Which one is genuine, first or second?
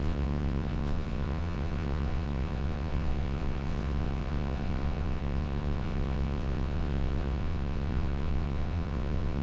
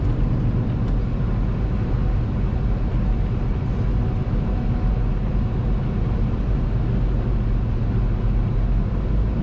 second